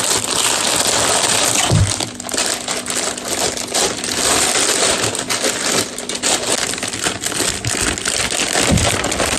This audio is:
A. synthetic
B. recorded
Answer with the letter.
B